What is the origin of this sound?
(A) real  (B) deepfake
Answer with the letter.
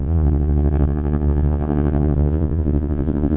B